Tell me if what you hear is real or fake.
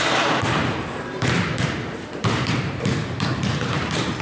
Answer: fake